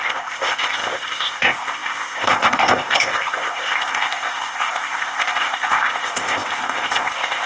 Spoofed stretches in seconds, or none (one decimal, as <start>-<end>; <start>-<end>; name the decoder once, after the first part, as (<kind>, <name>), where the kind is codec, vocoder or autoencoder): 0.0-7.5 (codec, ZipCodec)

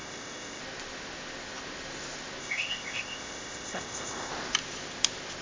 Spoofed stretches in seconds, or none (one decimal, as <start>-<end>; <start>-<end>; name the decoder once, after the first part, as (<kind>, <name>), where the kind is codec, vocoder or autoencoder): 0.0-0.6 (codec, ZipCodec); 2.4-4.3

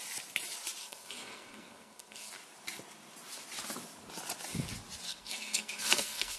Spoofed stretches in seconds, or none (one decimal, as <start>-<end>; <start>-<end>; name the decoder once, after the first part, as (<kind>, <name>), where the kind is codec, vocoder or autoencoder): 0.8-2.3 (codec, SNAC); 5.1-6.4

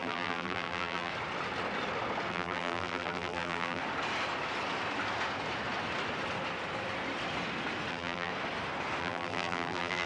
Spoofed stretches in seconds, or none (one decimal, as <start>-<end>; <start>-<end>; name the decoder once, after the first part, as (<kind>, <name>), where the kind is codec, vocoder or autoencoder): 0.0-1.1 (vocoder, BigVGAN v2); 2.3-3.8; 7.9-8.3; 9.0-10.1

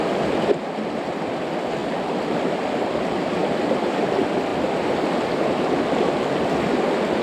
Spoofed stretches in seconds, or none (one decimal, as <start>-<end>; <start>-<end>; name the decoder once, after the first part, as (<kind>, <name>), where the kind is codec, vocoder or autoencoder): none

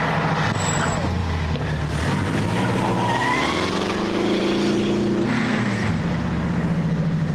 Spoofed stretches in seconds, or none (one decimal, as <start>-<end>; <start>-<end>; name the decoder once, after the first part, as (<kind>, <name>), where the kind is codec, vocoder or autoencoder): 5.2-6.0 (codec, SNAC)